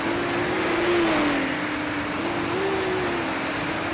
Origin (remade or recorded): recorded